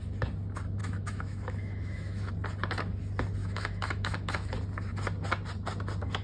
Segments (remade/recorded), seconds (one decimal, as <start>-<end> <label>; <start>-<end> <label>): 0.0-0.8 recorded; 0.8-2.3 remade; 2.3-3.4 recorded; 3.4-4.5 remade; 4.5-6.2 recorded